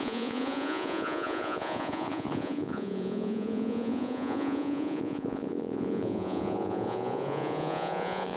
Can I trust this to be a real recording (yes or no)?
no